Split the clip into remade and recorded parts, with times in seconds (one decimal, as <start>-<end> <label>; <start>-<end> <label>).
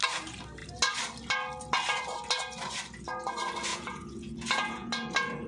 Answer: 0.0-3.7 recorded; 3.7-4.9 remade; 4.9-5.5 recorded